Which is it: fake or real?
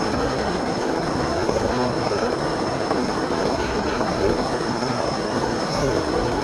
fake